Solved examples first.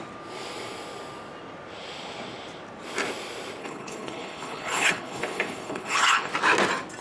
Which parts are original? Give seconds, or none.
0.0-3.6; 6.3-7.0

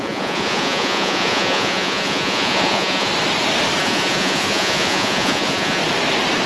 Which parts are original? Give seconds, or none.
3.1-3.8; 5.8-6.5

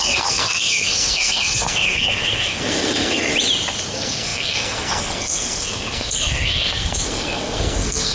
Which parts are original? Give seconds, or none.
3.3-3.9

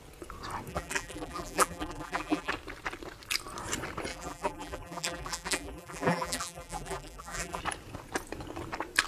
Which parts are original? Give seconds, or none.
0.0-0.7; 2.5-4.1; 7.6-9.1

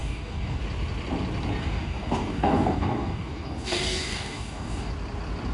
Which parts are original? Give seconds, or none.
0.6-1.6; 4.9-5.5

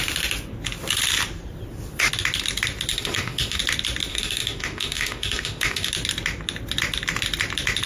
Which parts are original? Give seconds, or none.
0.0-2.9; 3.6-4.1; 5.9-7.9